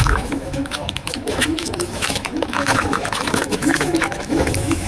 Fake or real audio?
fake